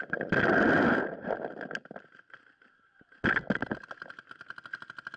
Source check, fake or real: real